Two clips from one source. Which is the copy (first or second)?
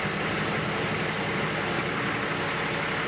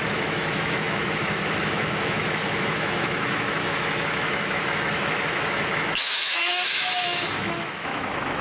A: second